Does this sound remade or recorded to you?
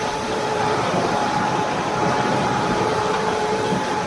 remade